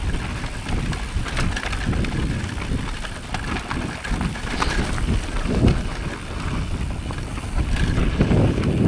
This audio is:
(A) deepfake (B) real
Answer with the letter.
B